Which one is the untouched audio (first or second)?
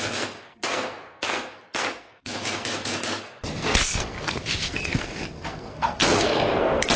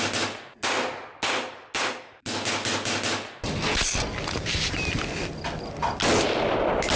second